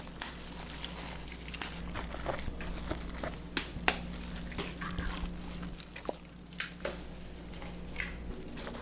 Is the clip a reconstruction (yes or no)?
no